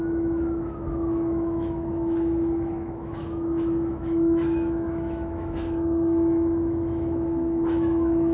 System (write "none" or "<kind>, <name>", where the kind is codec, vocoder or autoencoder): autoencoder, DAC-VAE